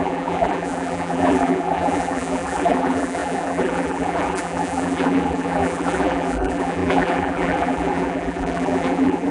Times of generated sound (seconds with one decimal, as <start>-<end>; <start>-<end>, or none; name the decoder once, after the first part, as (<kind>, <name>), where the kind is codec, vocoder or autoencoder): 0.0-9.3 (vocoder, BigVGAN v2)